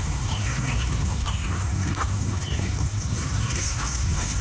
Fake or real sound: fake